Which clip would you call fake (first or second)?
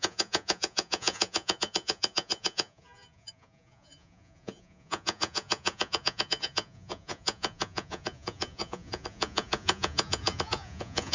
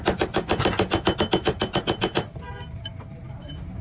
first